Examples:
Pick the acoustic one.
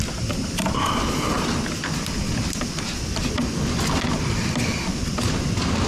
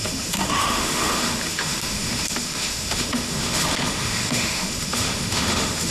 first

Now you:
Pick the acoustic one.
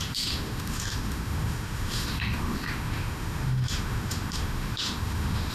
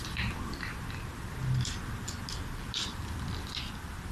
second